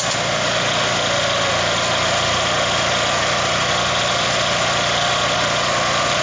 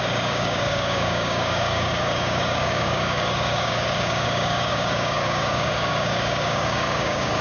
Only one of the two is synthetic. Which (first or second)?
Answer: second